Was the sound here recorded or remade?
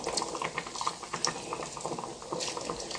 recorded